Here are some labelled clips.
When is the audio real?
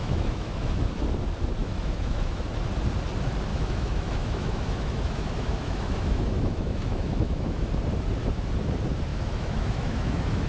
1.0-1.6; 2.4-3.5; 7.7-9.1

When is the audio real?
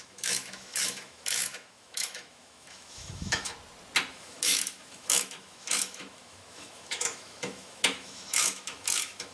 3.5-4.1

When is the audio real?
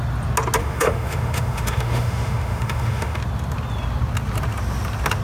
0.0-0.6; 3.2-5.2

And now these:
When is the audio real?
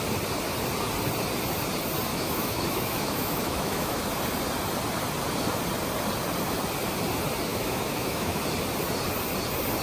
0.0-2.1; 4.0-7.5; 8.4-9.8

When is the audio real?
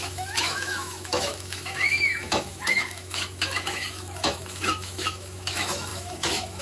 none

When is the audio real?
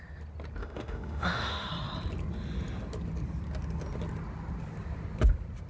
0.0-0.6; 1.7-5.7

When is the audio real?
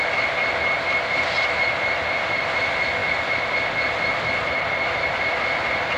0.0-6.0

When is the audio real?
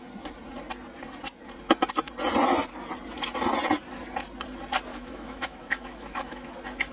0.0-4.9; 6.5-6.9